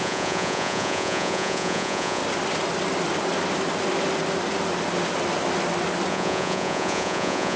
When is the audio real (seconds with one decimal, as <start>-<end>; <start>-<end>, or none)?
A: 2.2-6.1